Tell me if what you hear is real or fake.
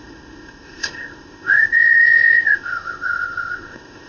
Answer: fake